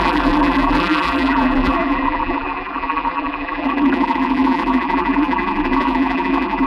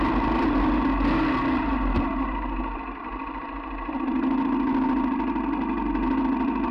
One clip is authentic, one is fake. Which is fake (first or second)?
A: first